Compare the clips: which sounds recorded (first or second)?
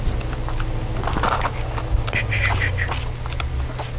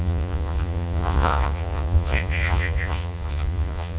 first